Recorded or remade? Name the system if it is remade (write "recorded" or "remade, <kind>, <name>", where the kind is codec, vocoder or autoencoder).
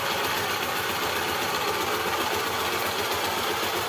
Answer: recorded